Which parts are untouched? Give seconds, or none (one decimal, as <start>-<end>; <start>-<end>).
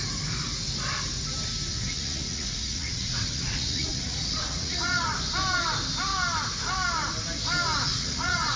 0.0-1.7; 5.1-7.9